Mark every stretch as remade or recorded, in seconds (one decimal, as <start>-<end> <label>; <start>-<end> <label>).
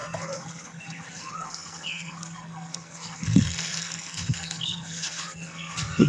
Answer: 0.0-6.1 remade